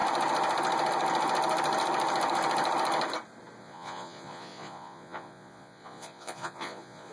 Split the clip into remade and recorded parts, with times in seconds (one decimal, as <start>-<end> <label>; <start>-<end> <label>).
0.0-3.6 recorded; 3.6-7.1 remade